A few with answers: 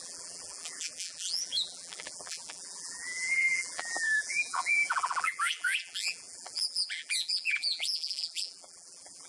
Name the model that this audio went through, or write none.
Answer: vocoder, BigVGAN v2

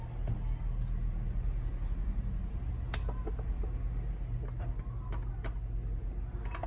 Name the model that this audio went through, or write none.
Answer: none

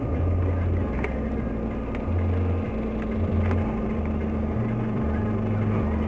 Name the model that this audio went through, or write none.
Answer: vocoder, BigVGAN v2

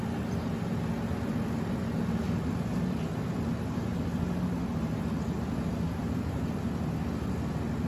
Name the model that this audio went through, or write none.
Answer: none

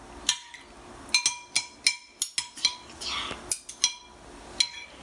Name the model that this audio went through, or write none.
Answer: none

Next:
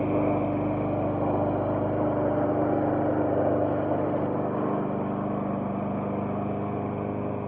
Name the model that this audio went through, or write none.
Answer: none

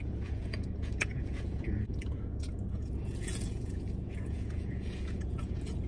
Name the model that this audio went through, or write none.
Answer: vocoder, Vocos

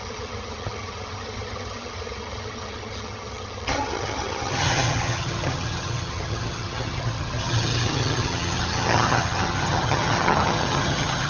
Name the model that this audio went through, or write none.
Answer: vocoder, HiFi-GAN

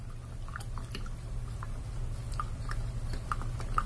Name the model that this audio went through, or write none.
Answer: none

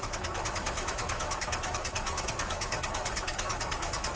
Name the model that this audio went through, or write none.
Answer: autoencoder, DAC-VAE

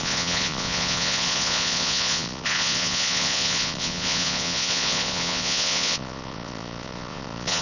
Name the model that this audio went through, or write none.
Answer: vocoder, Vocos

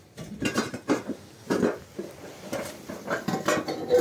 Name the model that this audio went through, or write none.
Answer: vocoder, BigVGAN v2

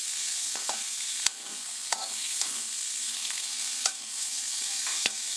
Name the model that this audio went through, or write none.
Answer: codec, SNAC